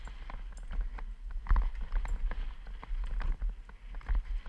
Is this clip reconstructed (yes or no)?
no